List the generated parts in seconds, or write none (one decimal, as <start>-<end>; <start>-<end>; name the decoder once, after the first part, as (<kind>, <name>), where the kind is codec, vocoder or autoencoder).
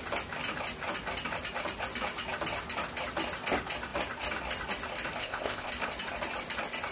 5.2-5.7 (codec, ZipCodec)